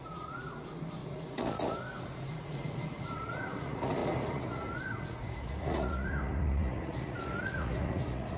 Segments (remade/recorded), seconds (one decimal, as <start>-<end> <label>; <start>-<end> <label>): 0.0-8.4 remade